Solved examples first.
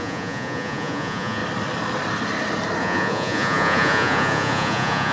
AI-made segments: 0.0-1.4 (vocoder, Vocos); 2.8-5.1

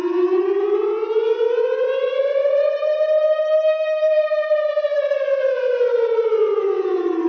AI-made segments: none

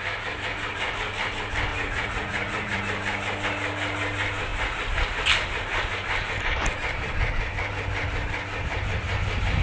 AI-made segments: 1.7-2.8 (vocoder, Vocos)

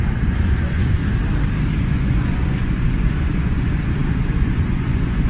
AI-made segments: 0.0-1.0 (vocoder, Vocos); 1.8-5.3